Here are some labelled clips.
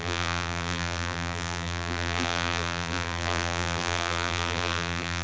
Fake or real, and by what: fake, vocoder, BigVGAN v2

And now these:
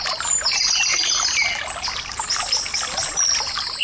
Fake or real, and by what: real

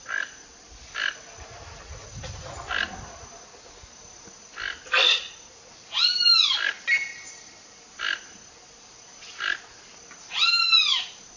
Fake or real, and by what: real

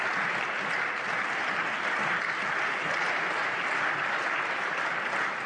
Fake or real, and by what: real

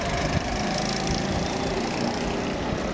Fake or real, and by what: real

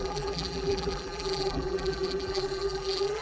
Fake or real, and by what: fake, vocoder, BigVGAN v2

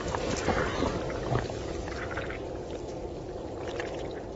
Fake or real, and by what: real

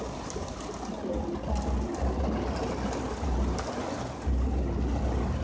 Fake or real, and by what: real